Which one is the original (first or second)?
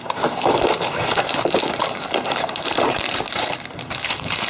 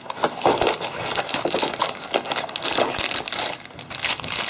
second